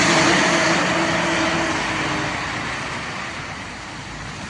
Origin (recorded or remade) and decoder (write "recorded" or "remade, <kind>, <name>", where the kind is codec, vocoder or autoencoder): recorded